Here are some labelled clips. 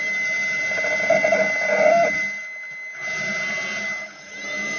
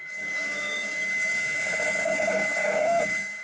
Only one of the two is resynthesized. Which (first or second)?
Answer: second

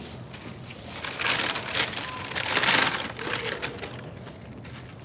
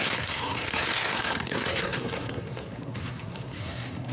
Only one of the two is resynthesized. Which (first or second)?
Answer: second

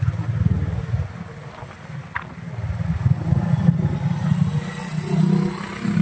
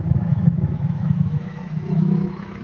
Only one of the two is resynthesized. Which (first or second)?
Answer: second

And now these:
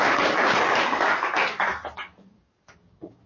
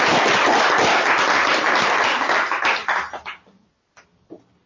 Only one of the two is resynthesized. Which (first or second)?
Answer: first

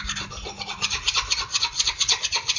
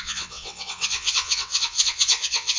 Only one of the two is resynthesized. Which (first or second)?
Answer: second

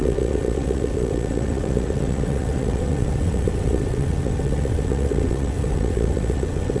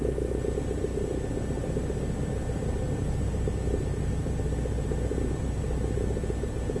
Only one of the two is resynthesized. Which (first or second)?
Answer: first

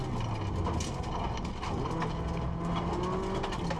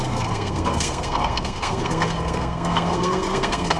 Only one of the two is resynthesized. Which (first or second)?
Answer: second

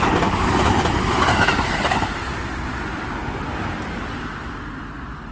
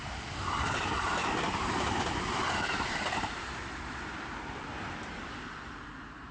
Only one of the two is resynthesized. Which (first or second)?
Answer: second